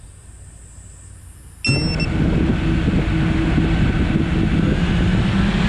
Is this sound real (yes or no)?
yes